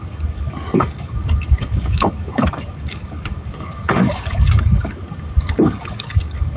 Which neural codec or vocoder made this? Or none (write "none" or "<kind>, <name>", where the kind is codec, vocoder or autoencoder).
codec, DAC